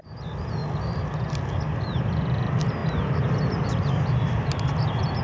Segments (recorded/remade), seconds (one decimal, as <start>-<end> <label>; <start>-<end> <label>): 0.0-5.2 recorded